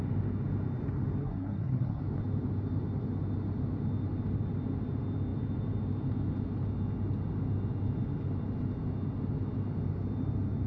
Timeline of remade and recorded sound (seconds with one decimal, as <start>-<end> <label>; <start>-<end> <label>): 0.0-1.2 recorded; 1.2-2.0 remade; 2.0-10.7 recorded